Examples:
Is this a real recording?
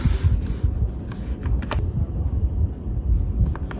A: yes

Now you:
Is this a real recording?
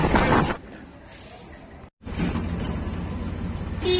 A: yes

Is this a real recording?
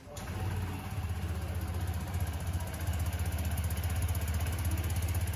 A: yes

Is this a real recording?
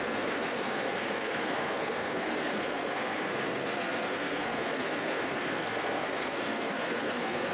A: no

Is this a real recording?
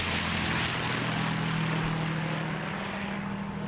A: yes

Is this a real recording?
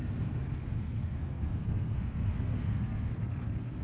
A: no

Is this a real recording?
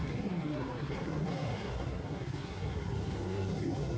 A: no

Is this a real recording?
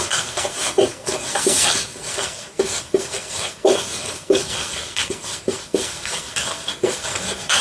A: no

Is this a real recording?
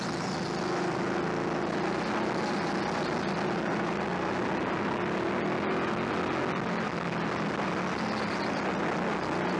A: yes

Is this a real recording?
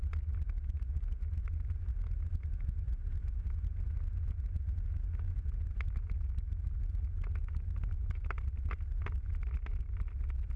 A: yes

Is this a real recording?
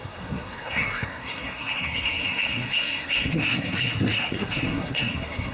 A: no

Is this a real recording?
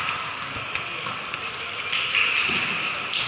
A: yes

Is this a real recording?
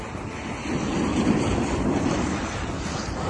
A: yes